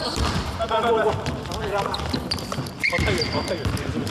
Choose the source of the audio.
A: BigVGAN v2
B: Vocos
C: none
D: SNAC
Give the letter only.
A